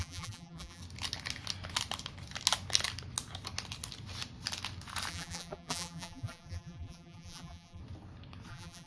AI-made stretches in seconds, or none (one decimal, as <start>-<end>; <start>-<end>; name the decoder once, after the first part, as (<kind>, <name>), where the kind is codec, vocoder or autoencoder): 0.0-0.8 (vocoder, BigVGAN v2); 5.1-7.8; 8.5-8.9

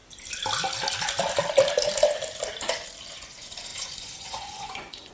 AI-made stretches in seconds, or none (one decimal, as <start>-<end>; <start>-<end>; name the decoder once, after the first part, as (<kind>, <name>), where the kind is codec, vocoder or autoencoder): 3.1-5.1 (vocoder, Vocos)

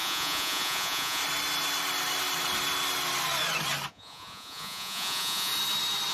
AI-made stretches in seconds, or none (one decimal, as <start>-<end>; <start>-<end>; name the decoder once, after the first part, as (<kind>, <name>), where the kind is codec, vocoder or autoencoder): 0.0-1.2 (vocoder, Vocos); 3.9-5.5

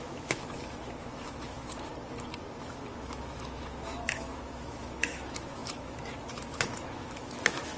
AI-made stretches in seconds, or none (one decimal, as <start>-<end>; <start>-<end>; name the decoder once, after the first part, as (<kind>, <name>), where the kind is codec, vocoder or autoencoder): 0.0-1.9 (autoencoder, DAC-VAE); 2.6-7.8